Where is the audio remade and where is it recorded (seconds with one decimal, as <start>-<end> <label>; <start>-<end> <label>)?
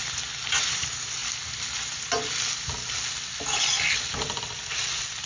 0.0-5.3 recorded